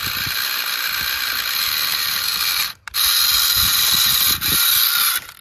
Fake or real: real